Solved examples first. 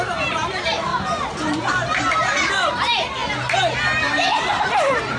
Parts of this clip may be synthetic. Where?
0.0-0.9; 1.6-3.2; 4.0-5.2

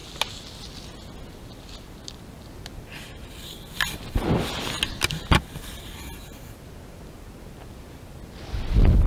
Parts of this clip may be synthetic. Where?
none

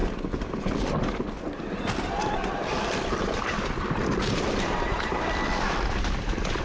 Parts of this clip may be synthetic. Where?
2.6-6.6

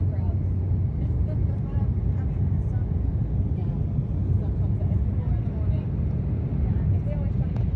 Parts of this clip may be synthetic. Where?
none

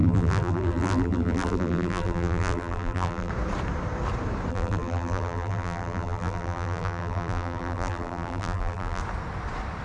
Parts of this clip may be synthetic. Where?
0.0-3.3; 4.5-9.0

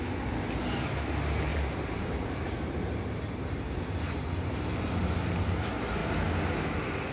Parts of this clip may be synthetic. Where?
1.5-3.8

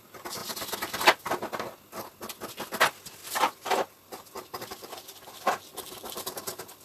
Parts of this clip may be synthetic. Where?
3.2-4.6

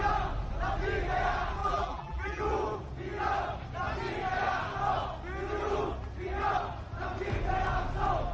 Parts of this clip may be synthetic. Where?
1.6-2.4